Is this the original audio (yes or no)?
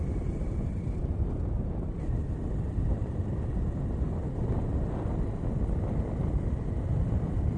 yes